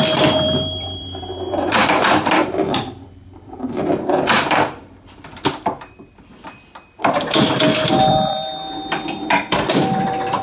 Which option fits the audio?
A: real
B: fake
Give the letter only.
B